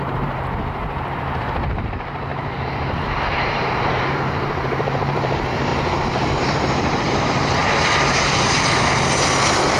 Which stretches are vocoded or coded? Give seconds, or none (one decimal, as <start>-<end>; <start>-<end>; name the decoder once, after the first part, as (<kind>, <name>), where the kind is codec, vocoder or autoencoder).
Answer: 0.0-0.8 (vocoder, BigVGAN v2); 1.4-5.7; 6.4-7.6